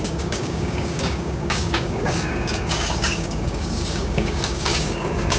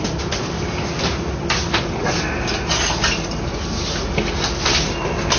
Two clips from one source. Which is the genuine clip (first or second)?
second